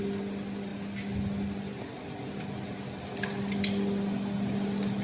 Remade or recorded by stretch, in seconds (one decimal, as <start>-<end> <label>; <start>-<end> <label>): 0.0-5.0 recorded